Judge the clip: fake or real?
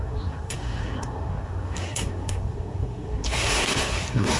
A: fake